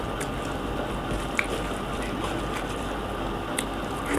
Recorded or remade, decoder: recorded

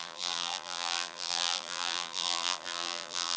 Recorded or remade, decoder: remade, vocoder, BigVGAN v2